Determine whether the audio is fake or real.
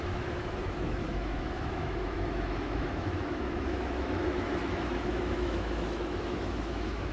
fake